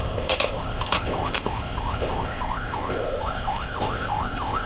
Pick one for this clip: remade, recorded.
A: remade